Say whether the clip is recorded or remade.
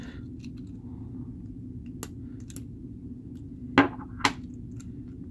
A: recorded